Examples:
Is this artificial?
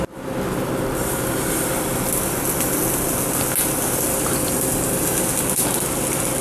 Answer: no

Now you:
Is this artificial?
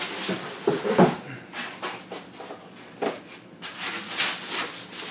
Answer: no